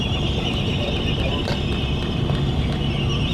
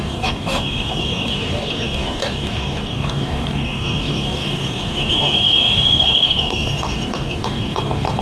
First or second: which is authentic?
first